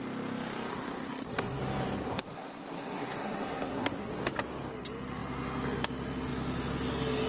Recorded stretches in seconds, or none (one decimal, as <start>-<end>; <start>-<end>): 0.0-0.7; 1.6-2.1; 4.1-7.3